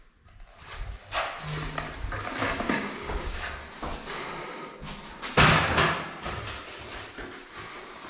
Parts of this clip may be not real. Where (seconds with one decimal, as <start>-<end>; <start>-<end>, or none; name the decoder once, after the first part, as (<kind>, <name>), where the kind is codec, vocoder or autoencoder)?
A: 2.4-3.4 (codec, DAC)